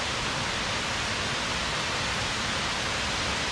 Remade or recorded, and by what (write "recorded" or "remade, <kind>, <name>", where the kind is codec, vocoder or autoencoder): recorded